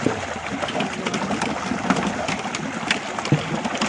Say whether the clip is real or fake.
real